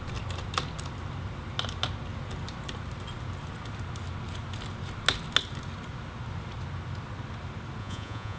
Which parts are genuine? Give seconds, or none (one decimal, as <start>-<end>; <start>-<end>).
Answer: 0.0-7.8